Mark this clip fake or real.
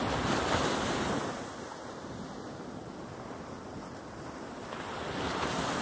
real